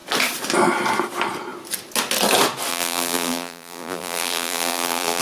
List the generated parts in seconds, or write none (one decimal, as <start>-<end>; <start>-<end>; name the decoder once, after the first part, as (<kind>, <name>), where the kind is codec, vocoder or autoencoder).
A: 2.7-5.2 (vocoder, BigVGAN v2)